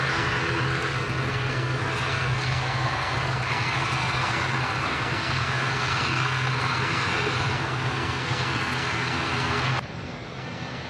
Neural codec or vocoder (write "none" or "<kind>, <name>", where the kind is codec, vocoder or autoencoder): codec, SNAC